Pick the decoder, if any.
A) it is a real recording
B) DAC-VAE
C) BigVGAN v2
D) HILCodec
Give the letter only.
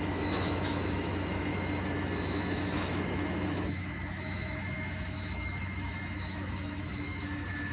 B